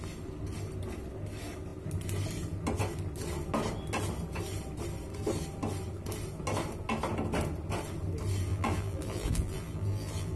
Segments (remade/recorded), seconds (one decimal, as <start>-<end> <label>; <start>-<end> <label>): 0.0-8.5 recorded; 8.5-10.4 remade